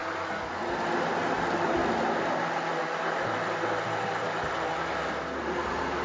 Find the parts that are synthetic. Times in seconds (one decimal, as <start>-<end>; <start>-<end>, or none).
none